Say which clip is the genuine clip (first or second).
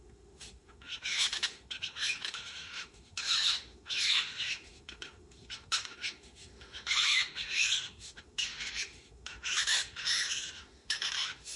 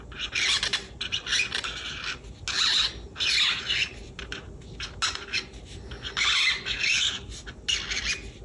second